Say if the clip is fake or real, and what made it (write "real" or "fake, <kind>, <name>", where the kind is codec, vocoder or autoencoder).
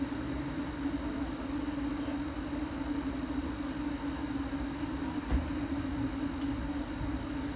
real